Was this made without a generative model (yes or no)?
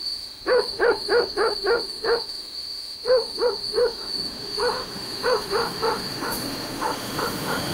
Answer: no